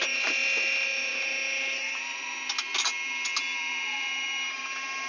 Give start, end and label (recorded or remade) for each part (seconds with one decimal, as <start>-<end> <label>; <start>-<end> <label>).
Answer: 0.0-5.1 recorded

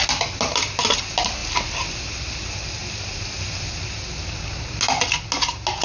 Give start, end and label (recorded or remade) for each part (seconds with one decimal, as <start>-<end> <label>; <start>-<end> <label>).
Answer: 0.0-5.8 recorded

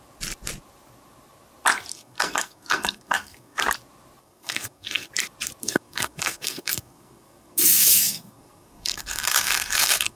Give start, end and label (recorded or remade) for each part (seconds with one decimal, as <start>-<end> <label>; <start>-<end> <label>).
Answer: 0.0-1.9 recorded; 1.9-3.6 remade; 3.6-4.2 recorded; 4.2-5.1 remade; 5.1-5.6 recorded; 5.6-10.2 remade

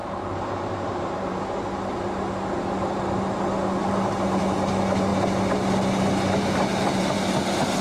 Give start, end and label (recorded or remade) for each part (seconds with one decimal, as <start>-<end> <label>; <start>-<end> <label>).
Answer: 0.0-1.4 remade; 1.4-3.8 recorded; 3.8-4.4 remade; 4.4-7.8 recorded

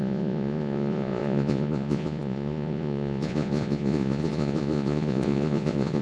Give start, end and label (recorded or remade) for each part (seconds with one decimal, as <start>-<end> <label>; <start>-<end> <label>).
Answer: 0.0-6.0 remade

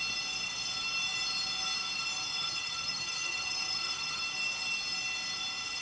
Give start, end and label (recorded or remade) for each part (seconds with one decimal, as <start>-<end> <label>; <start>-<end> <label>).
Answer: 0.0-2.3 recorded; 2.3-4.2 remade; 4.2-5.8 recorded

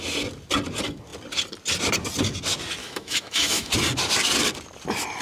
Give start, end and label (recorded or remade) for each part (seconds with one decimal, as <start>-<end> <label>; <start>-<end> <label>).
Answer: 0.0-2.8 recorded; 2.8-3.7 remade; 3.7-5.2 recorded